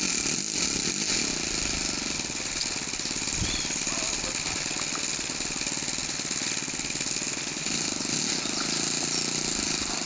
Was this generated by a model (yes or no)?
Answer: no